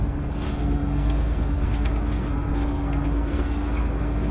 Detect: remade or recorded remade